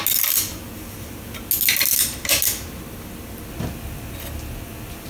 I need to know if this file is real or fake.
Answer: real